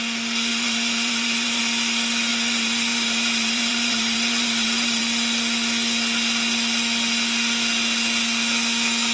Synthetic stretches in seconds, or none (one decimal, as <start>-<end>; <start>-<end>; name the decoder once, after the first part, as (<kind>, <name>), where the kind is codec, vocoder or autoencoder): 0.5-1.6 (vocoder, BigVGAN v2); 2.3-5.0